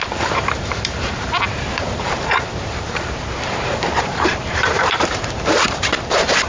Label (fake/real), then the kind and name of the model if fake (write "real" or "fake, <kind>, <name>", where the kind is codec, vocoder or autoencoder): fake, vocoder, BigVGAN v2